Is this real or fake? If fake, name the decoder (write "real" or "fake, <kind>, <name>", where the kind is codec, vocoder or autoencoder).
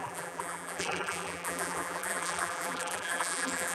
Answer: fake, vocoder, BigVGAN v2